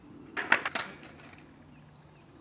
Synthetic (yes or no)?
no